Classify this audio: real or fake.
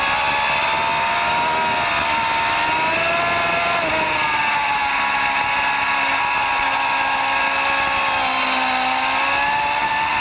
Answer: real